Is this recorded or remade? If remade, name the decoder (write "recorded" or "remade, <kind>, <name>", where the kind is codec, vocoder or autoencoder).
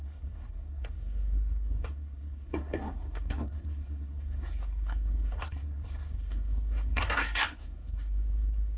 remade, codec, SNAC